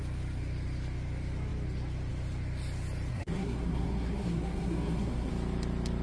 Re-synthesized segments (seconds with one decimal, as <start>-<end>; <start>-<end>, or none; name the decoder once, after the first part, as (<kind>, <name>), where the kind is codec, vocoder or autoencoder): 3.1-5.3 (codec, SNAC)